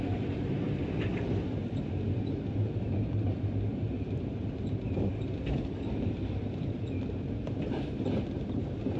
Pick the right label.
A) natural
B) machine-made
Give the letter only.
B